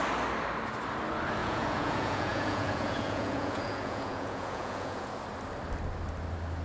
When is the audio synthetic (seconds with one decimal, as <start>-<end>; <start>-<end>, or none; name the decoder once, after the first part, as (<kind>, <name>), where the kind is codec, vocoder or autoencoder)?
1.4-5.1 (vocoder, Vocos)